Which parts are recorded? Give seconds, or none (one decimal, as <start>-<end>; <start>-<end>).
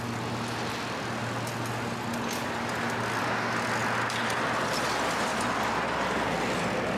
0.0-7.0